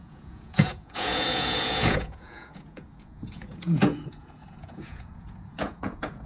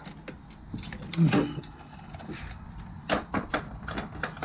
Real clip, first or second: second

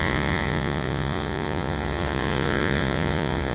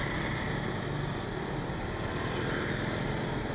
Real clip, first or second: second